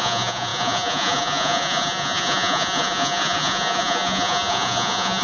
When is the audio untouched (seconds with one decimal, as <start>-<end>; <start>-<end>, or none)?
none